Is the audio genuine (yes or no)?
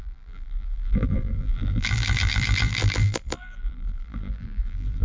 no